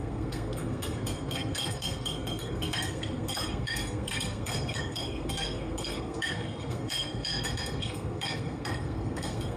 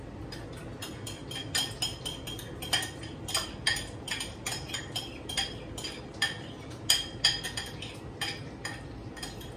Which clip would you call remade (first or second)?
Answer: first